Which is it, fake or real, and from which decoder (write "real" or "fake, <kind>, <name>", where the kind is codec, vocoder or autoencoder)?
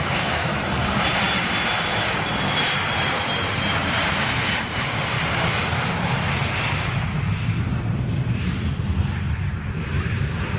fake, vocoder, BigVGAN v2